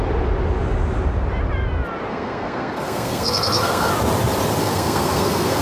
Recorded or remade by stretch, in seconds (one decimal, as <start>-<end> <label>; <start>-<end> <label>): 0.0-2.1 recorded; 2.1-3.9 remade; 3.9-4.6 recorded; 4.6-5.6 remade